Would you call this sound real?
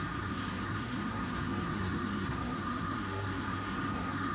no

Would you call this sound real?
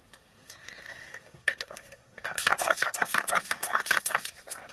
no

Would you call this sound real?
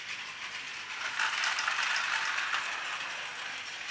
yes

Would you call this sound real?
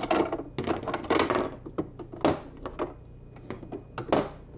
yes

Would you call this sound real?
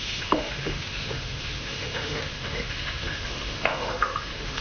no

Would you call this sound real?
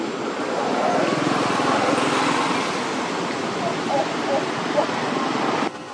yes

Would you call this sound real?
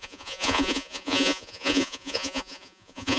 no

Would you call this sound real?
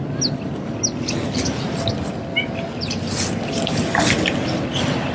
yes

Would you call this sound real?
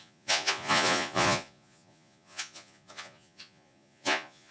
no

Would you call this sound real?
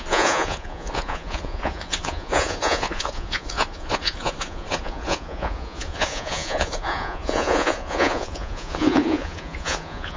no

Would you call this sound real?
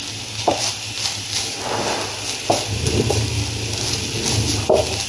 yes